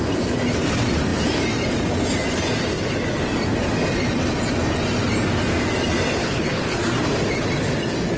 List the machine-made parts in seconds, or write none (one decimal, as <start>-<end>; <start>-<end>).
6.2-6.8